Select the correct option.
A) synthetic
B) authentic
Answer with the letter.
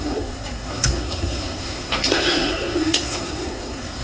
A